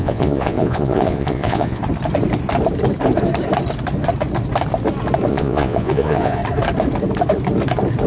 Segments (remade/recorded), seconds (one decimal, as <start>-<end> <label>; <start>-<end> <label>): 0.0-1.8 remade; 1.8-5.3 recorded; 5.3-6.4 remade; 6.4-8.1 recorded